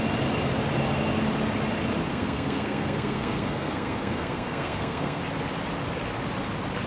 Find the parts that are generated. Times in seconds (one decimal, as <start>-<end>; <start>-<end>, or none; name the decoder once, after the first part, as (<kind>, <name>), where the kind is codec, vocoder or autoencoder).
2.1-5.2 (codec, SNAC)